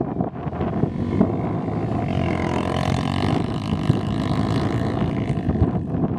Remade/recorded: recorded